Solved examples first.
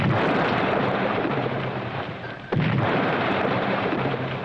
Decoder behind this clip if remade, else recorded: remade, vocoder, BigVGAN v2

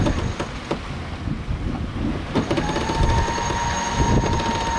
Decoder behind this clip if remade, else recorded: recorded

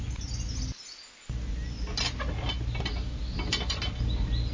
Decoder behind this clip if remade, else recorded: recorded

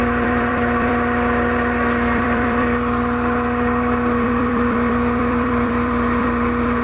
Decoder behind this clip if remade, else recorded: remade, vocoder, BigVGAN v2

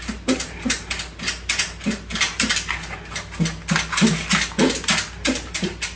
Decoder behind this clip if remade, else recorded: recorded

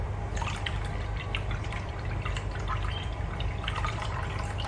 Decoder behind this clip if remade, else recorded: remade, vocoder, BigVGAN v2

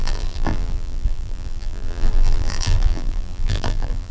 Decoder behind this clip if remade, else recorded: remade, vocoder, BigVGAN v2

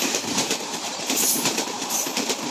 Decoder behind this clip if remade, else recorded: remade, vocoder, BigVGAN v2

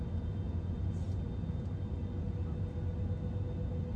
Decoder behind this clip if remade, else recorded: recorded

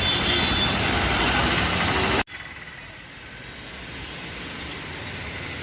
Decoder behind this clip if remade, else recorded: recorded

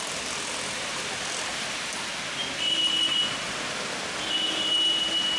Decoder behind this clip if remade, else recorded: recorded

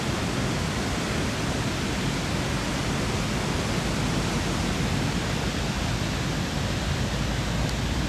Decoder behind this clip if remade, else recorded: recorded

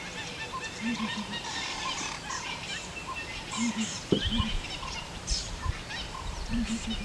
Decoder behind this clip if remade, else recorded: remade, vocoder, BigVGAN v2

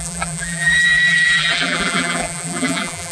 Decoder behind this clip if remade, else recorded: remade, vocoder, BigVGAN v2